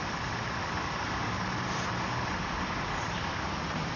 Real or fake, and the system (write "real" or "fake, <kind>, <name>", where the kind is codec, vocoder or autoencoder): real